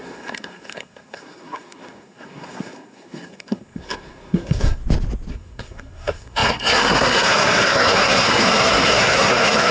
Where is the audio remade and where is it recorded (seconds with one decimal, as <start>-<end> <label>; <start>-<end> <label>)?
0.0-4.8 remade; 4.8-5.3 recorded; 5.3-9.7 remade